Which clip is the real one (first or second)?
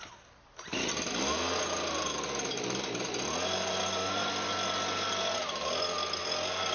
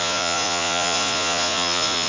first